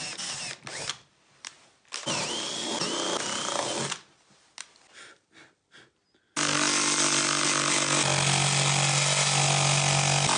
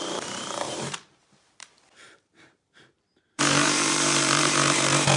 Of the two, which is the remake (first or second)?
second